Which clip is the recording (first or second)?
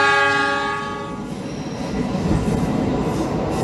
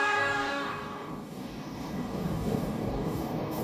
first